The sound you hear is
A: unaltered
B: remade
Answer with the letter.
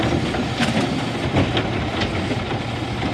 A